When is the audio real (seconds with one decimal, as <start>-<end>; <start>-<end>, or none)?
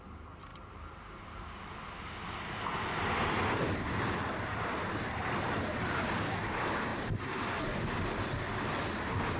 0.0-0.5; 1.5-6.9; 8.5-9.4